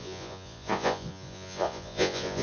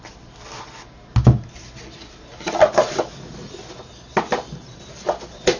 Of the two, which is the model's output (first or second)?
first